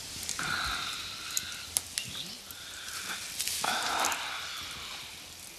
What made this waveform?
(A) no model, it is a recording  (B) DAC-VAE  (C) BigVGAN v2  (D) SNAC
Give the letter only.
A